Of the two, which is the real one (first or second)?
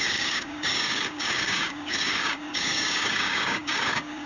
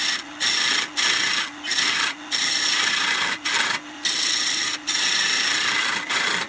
second